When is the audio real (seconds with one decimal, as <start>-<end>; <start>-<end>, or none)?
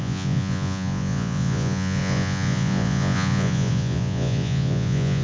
none